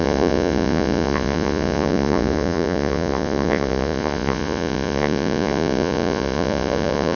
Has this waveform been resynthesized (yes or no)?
yes